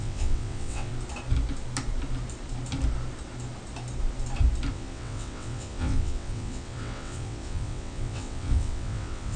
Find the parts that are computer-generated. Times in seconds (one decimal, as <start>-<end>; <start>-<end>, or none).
0.0-0.9; 4.7-9.4